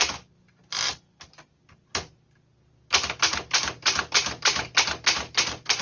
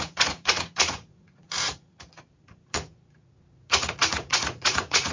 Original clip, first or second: first